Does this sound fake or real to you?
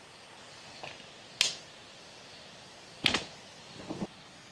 real